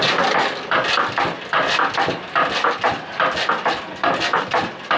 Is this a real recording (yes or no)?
yes